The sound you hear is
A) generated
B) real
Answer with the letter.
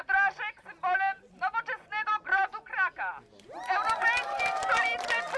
B